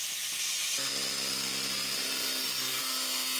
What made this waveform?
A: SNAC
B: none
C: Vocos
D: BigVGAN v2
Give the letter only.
B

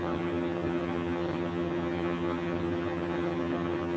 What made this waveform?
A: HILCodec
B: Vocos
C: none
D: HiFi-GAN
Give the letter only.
D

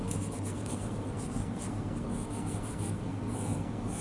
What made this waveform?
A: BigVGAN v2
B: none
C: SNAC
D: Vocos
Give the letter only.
C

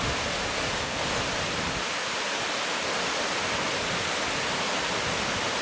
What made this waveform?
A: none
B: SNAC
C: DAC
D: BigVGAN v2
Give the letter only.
A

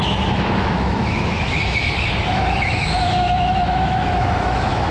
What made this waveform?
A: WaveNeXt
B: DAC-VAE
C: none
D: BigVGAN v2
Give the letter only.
B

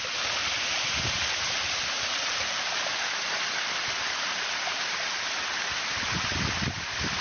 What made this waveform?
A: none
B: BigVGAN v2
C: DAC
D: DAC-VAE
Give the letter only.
A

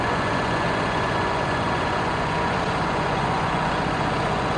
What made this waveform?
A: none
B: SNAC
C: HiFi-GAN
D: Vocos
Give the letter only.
D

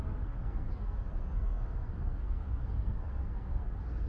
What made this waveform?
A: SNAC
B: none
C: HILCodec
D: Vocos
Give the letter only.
A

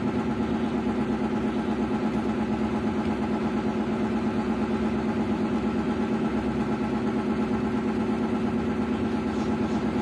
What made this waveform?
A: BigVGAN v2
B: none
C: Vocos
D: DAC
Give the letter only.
B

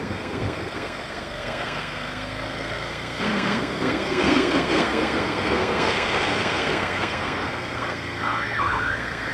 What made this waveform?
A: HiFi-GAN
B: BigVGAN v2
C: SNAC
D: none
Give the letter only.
C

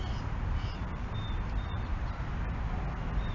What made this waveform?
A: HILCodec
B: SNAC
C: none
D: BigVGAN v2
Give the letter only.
C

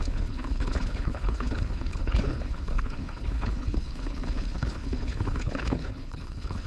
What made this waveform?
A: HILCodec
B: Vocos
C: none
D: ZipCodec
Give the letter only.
A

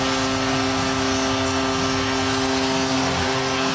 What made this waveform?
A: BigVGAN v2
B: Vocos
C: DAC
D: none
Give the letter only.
D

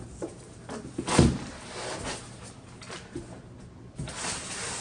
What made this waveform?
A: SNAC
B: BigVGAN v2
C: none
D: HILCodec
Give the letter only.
C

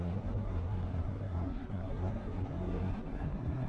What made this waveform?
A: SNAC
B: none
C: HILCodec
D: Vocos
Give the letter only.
A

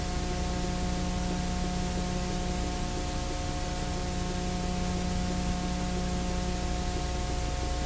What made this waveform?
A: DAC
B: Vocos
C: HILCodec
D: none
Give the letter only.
D